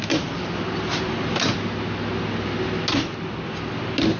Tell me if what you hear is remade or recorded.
recorded